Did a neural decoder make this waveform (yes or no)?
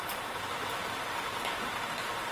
no